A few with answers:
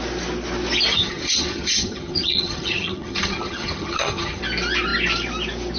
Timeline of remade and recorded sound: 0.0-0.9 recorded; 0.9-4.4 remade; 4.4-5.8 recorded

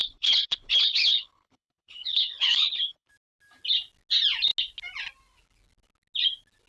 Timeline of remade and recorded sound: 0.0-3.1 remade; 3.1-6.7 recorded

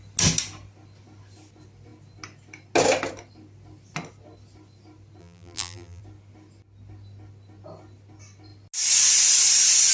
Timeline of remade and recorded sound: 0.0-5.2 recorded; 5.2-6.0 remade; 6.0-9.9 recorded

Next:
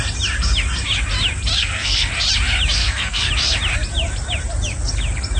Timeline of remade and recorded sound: 0.0-1.6 recorded; 1.6-2.1 remade; 2.1-2.8 recorded; 2.8-3.3 remade; 3.3-5.4 recorded

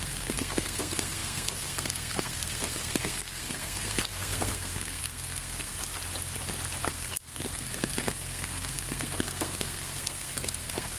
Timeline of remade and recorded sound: 0.0-5.8 remade; 5.8-6.8 recorded; 6.8-11.0 remade

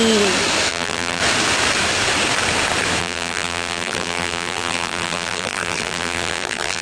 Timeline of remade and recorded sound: 0.0-0.7 recorded; 0.7-1.2 remade; 1.2-3.0 recorded; 3.0-6.8 remade

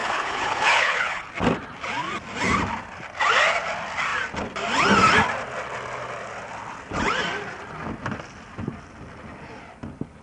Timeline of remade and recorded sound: 0.0-1.3 remade; 1.3-10.2 recorded